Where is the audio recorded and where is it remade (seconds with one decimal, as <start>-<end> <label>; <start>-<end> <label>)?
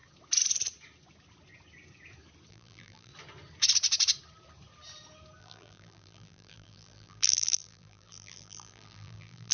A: 0.0-2.5 recorded; 2.5-3.1 remade; 3.1-5.4 recorded; 5.4-9.5 remade